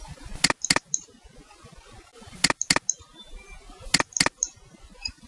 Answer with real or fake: real